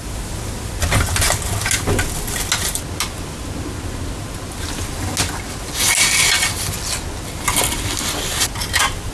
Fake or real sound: real